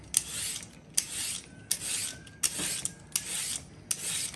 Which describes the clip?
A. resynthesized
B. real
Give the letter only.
B